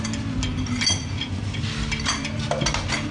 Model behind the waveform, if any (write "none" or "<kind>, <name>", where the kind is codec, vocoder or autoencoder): none